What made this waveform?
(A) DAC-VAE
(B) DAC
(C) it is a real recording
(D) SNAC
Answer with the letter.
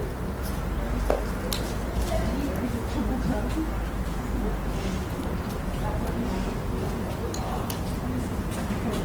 C